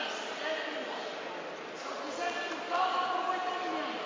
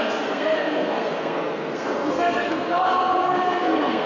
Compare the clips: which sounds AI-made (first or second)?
second